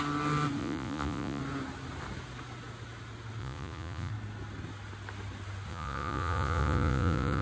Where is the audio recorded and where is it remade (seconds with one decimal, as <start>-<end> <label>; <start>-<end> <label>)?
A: 0.0-0.6 recorded; 0.6-1.4 remade; 1.4-3.4 recorded; 3.4-4.1 remade; 4.1-5.7 recorded; 5.7-7.4 remade